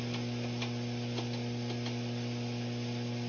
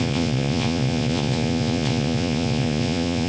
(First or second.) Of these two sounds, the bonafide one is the first